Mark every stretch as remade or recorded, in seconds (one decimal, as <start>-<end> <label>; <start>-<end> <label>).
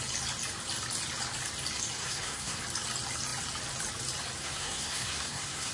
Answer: 0.0-2.0 recorded; 2.0-2.6 remade; 2.6-4.4 recorded; 4.4-5.7 remade